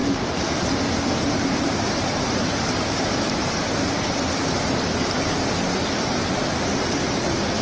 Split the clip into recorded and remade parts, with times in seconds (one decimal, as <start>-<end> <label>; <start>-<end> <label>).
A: 0.0-4.6 remade; 4.6-7.6 recorded